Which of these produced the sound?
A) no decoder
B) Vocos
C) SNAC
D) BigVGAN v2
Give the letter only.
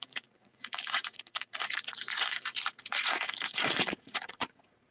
B